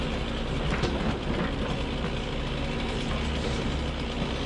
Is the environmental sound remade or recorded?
recorded